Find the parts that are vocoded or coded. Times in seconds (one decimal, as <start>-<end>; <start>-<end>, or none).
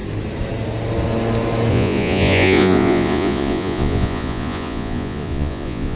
1.7-6.0